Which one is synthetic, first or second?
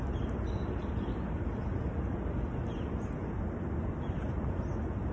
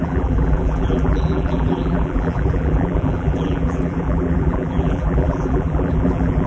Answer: second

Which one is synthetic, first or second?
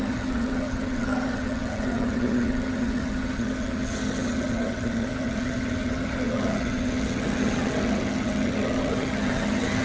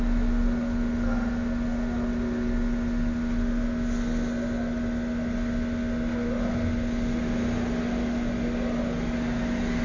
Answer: first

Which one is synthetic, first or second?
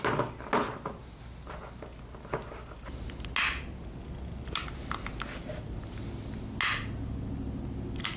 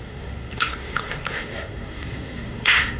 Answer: second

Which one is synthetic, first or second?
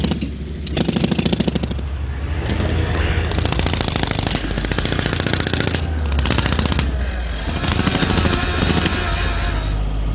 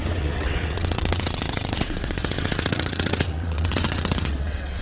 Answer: second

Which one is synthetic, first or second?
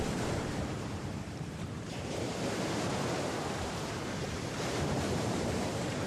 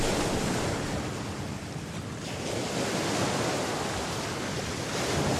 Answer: first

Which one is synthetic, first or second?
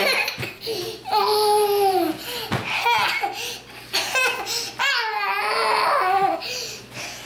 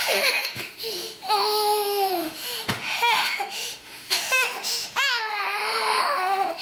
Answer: second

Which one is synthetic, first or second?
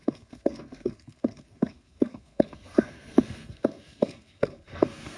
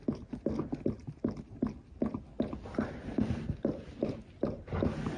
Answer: first